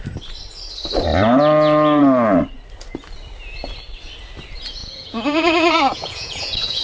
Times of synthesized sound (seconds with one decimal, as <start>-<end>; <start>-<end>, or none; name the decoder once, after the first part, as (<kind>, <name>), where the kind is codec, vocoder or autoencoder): 4.8-6.8 (vocoder, Vocos)